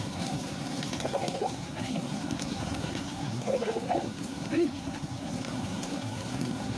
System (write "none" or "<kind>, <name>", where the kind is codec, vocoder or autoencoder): codec, SNAC